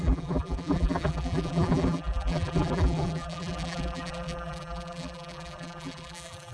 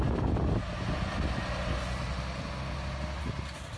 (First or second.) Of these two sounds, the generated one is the first